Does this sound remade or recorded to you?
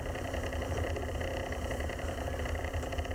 remade